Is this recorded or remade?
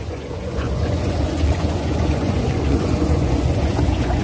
remade